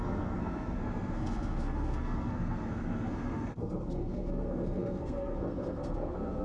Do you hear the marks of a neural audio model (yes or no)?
yes